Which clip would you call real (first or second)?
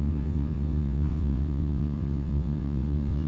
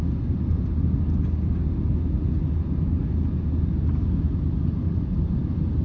second